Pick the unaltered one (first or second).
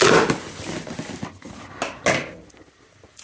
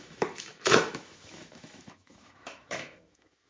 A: first